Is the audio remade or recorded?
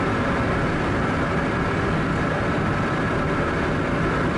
remade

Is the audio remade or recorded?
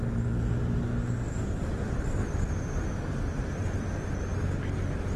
recorded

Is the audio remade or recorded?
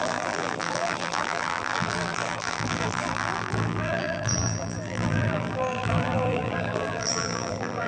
remade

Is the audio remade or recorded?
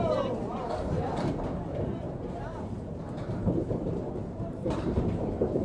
remade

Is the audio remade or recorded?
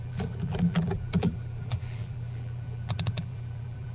remade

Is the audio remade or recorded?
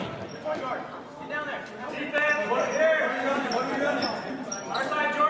recorded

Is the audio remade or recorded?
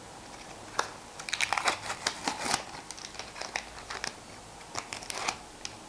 recorded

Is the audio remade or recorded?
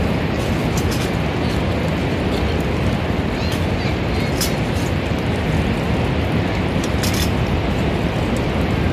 recorded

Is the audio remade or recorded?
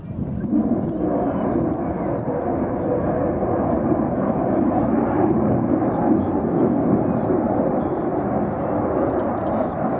recorded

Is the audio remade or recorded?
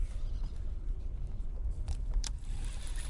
remade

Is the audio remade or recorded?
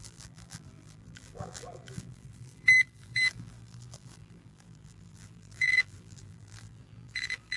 remade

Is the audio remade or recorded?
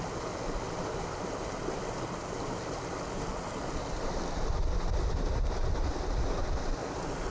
recorded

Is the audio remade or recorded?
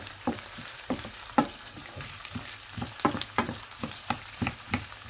remade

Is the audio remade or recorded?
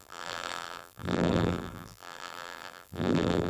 remade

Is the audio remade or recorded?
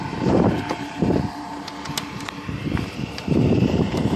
remade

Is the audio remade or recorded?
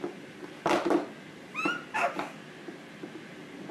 recorded